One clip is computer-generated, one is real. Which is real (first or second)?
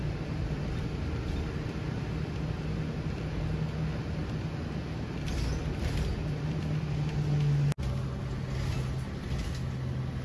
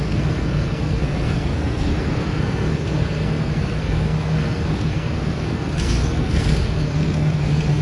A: first